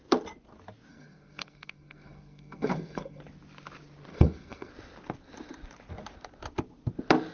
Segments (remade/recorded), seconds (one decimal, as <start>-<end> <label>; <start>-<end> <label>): 0.0-0.9 recorded; 0.9-3.2 remade; 3.2-4.1 recorded; 4.1-4.7 remade; 4.7-7.3 recorded